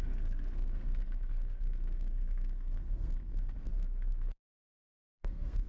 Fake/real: fake